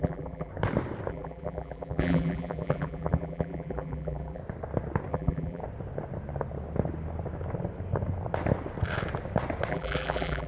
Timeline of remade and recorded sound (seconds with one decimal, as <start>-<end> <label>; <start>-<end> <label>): 0.0-0.5 remade; 0.5-1.1 recorded; 1.1-4.4 remade; 4.4-5.1 recorded; 5.1-5.6 remade; 5.6-9.7 recorded; 9.7-10.5 remade